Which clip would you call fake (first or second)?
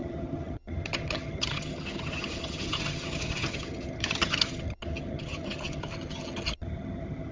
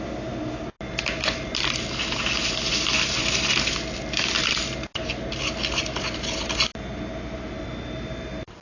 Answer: first